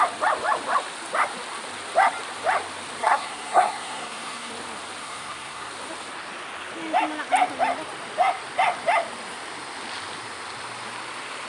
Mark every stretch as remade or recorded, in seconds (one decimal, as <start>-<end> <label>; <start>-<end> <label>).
0.0-3.0 recorded; 3.0-4.5 remade; 4.5-5.0 recorded; 5.0-5.7 remade; 5.7-11.5 recorded